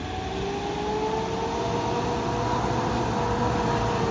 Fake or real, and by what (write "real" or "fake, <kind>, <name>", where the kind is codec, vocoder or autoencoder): real